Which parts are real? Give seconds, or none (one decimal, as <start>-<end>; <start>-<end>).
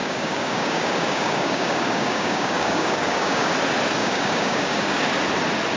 3.5-4.0; 5.0-5.8